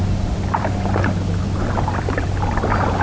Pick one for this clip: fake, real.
real